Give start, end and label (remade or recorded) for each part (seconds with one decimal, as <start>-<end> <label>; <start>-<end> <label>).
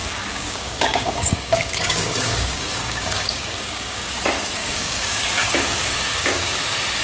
0.0-4.1 remade; 4.1-4.6 recorded; 4.6-6.6 remade; 6.6-7.0 recorded